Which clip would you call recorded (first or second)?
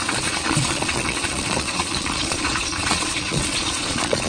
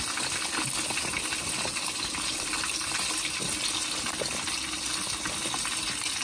second